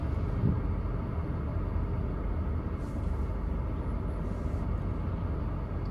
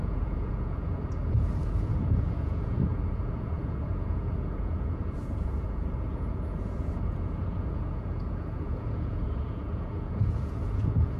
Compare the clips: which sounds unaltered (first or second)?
first